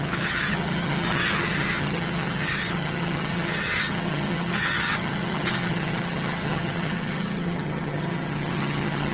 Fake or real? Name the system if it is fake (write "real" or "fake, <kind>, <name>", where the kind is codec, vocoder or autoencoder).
fake, vocoder, HiFi-GAN